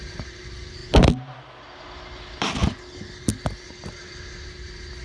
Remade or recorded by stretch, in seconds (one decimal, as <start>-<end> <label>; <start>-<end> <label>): 0.0-5.0 recorded